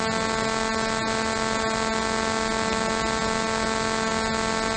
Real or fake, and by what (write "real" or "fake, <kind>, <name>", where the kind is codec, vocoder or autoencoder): real